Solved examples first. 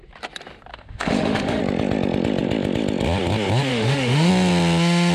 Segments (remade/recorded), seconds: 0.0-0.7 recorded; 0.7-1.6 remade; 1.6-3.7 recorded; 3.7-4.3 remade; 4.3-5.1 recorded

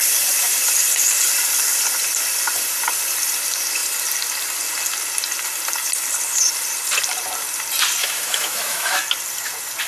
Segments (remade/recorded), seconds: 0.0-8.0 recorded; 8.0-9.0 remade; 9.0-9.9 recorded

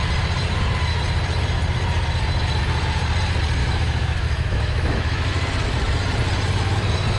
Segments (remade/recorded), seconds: 0.0-3.6 recorded; 3.6-5.3 remade; 5.3-7.2 recorded

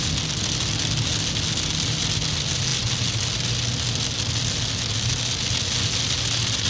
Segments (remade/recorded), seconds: 0.0-6.7 recorded

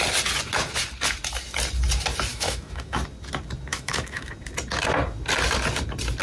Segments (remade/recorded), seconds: 0.0-2.3 recorded; 2.3-3.0 remade; 3.0-3.7 recorded; 3.7-4.3 remade; 4.3-6.2 recorded

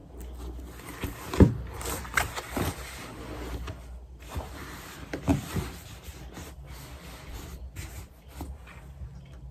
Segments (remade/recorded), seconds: 0.0-9.5 recorded

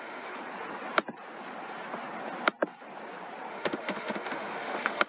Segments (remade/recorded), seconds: 0.0-0.4 remade; 0.4-3.5 recorded; 3.5-5.1 remade

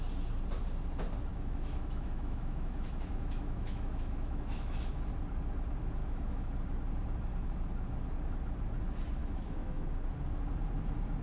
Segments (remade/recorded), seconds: 0.0-1.3 recorded; 1.3-5.1 remade; 5.1-6.0 recorded; 6.0-6.5 remade; 6.5-9.2 recorded; 9.2-9.9 remade; 9.9-11.2 recorded